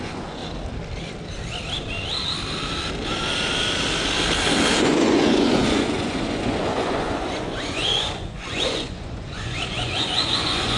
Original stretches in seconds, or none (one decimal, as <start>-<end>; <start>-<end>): 0.4-4.8